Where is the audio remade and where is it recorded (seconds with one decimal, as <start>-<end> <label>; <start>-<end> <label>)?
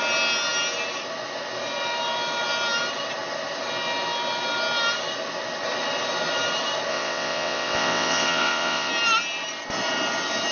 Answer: 0.0-6.9 recorded; 6.9-8.9 remade; 8.9-10.5 recorded